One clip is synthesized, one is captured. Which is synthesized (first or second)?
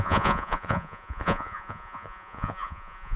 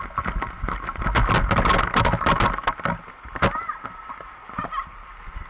first